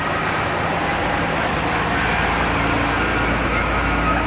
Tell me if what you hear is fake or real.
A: real